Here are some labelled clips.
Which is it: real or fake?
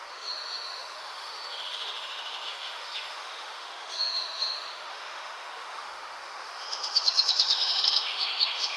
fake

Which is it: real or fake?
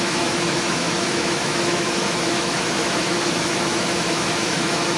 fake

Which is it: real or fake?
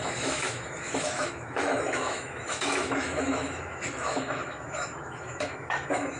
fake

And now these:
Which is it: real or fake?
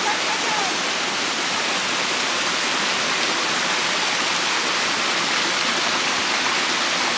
real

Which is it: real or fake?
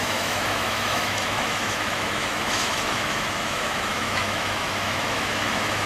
fake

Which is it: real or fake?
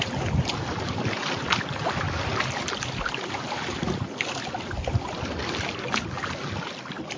real